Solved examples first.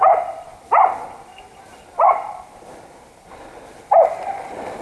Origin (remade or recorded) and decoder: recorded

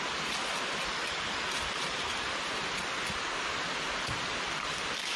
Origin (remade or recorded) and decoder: recorded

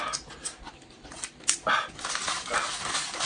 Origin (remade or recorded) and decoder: recorded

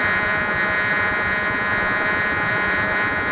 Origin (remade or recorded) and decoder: remade, vocoder, Vocos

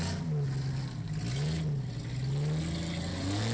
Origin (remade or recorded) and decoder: recorded